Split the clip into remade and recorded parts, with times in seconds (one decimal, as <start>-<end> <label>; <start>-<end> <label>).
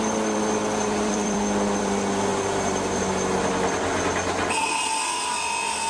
0.0-2.3 remade; 2.3-5.9 recorded